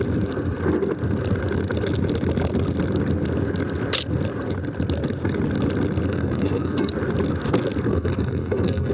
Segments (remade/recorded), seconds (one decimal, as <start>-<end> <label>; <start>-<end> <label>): 0.0-6.1 recorded; 6.1-6.9 remade; 6.9-7.9 recorded; 7.9-8.9 remade